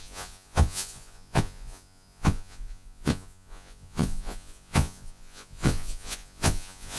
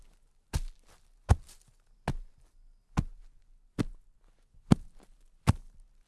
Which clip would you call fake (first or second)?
first